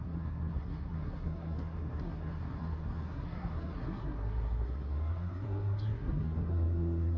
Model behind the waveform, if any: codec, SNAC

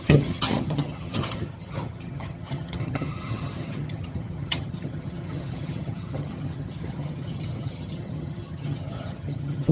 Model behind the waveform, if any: vocoder, HiFi-GAN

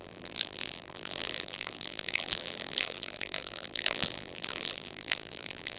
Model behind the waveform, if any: vocoder, BigVGAN v2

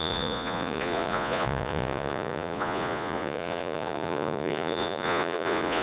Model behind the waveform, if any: vocoder, Vocos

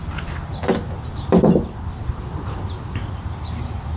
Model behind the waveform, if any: vocoder, BigVGAN v2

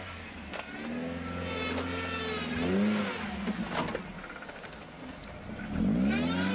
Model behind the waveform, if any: none